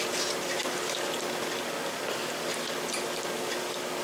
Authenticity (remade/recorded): recorded